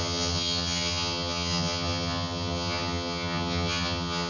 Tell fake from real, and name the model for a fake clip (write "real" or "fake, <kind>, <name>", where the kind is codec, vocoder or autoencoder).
fake, vocoder, HiFi-GAN